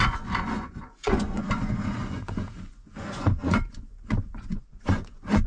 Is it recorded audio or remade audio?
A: remade